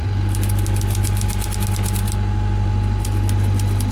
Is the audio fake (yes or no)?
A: no